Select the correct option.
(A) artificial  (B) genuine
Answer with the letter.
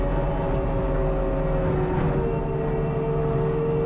B